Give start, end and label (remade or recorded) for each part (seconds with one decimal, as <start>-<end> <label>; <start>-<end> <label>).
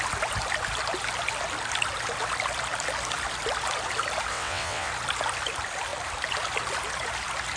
0.0-4.3 recorded; 4.3-4.9 remade; 4.9-7.6 recorded